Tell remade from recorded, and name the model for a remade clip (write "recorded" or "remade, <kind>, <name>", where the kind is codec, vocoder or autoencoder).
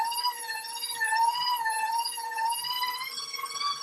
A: recorded